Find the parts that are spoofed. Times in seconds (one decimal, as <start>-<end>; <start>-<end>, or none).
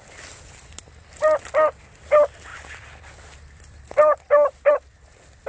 none